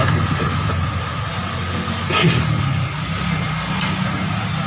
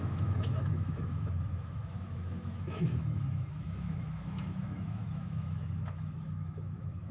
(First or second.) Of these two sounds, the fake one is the second